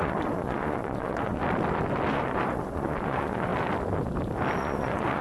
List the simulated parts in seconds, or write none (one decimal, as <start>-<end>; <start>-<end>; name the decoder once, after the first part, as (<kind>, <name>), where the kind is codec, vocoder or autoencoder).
0.0-1.4 (vocoder, Vocos); 2.1-3.5; 4.6-5.2